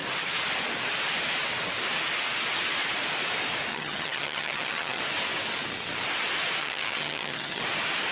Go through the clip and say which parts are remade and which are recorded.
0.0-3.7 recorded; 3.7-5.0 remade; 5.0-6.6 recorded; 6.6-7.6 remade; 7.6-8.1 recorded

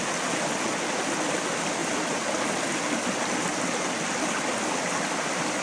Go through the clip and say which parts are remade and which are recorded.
0.0-5.6 recorded

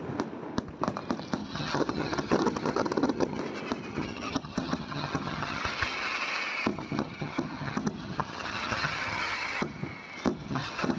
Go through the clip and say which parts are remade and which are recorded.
0.0-1.4 recorded; 1.4-3.4 remade; 3.4-3.9 recorded; 3.9-5.6 remade; 5.6-6.7 recorded; 6.7-9.8 remade; 9.8-10.3 recorded; 10.3-11.0 remade